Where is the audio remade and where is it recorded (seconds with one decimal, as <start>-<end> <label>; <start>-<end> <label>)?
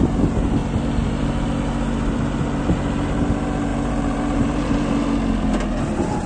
0.0-3.7 recorded; 3.7-4.9 remade; 4.9-6.3 recorded